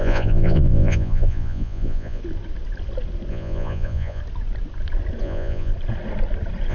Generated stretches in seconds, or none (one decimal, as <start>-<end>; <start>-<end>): 0.0-2.2; 3.3-4.2; 5.2-5.7